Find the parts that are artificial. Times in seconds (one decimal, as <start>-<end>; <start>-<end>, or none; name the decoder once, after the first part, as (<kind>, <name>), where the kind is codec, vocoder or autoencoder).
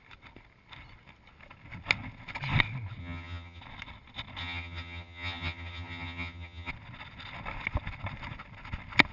3.0-3.6 (vocoder, HiFi-GAN); 4.4-6.7